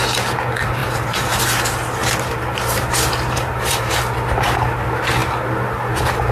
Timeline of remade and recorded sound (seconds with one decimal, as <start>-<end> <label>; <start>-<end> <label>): 0.0-0.8 recorded; 0.8-1.4 remade; 1.4-2.0 recorded; 2.0-3.9 remade; 3.9-6.3 recorded